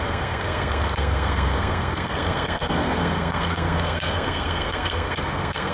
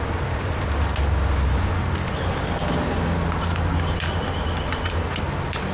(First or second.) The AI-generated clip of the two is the first